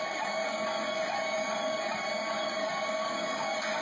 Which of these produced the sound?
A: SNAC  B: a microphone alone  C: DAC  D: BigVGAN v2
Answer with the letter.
C